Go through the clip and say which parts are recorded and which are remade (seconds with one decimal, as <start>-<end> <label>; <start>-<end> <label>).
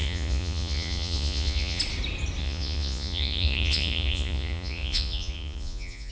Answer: 0.0-1.8 remade; 1.8-2.4 recorded; 2.4-6.1 remade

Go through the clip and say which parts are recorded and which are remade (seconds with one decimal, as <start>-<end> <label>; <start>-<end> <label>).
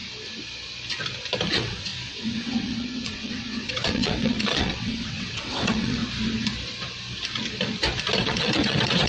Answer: 0.0-1.5 recorded; 1.5-6.0 remade; 6.0-8.2 recorded; 8.2-9.1 remade